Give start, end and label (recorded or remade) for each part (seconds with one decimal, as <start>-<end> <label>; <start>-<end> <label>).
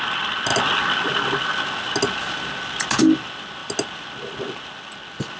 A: 0.0-5.4 recorded